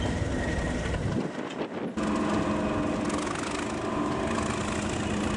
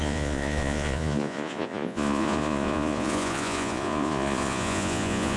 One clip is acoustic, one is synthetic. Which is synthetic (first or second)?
second